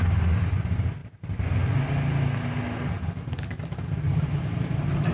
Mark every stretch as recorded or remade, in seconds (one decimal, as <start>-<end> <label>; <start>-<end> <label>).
0.0-1.0 remade; 1.0-3.9 recorded; 3.9-5.1 remade